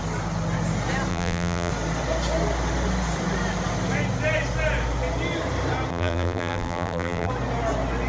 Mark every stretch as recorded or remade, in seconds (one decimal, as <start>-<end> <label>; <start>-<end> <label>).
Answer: 0.0-1.1 recorded; 1.1-1.7 remade; 1.7-5.9 recorded; 5.9-7.3 remade; 7.3-8.1 recorded